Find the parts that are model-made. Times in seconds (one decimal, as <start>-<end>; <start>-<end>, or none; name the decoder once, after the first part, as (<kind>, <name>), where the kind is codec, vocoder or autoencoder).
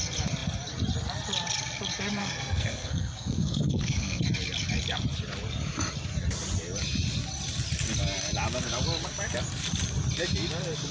2.2-4.2 (codec, SNAC)